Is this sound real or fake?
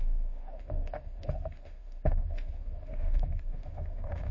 fake